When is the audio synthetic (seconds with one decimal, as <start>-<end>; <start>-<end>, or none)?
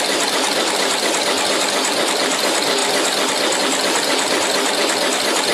none